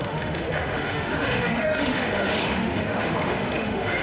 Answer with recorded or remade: remade